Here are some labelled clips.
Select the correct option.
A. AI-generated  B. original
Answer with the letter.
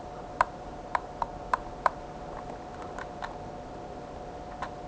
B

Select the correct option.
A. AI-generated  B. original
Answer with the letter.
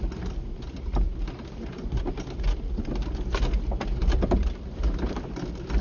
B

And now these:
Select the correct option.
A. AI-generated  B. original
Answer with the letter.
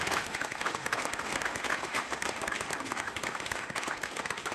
A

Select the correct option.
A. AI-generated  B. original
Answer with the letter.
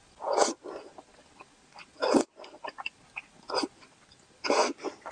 B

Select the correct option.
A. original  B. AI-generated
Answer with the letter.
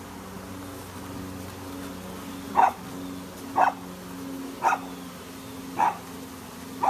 A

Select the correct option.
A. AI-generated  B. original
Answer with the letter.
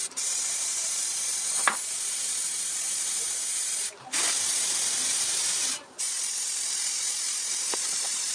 A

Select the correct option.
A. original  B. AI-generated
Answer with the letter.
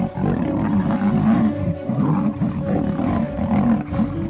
A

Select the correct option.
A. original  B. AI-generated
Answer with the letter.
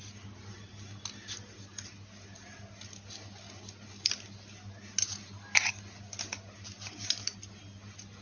A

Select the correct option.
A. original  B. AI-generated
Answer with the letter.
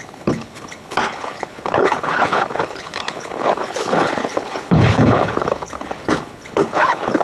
B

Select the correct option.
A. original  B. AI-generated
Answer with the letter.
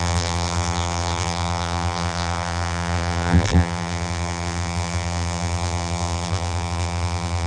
B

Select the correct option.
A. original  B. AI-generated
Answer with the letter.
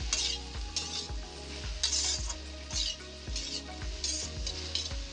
A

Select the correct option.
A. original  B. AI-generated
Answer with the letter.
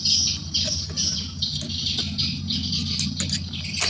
A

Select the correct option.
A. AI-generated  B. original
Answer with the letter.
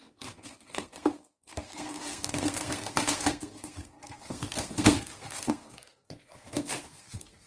A